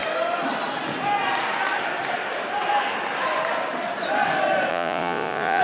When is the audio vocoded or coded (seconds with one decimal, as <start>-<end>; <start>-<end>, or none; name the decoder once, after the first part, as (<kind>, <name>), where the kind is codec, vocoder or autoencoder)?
4.7-5.6 (vocoder, Vocos)